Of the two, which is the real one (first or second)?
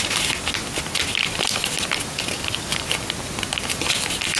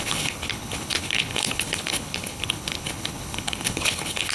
first